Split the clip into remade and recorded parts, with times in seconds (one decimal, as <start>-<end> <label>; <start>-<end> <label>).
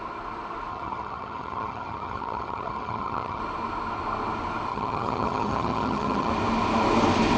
0.0-0.7 recorded; 0.7-3.4 remade; 3.4-4.7 recorded; 4.7-6.3 remade; 6.3-7.4 recorded